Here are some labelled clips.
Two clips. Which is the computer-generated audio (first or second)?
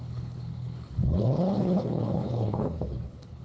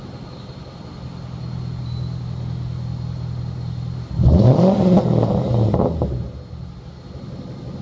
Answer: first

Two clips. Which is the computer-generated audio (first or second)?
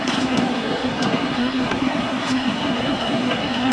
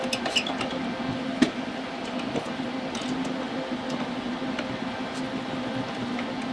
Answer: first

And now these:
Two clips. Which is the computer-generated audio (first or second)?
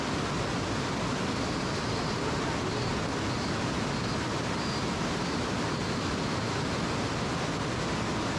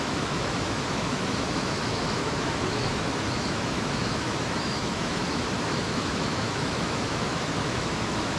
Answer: second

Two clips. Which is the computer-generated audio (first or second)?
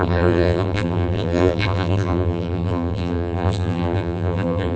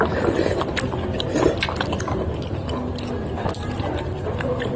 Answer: first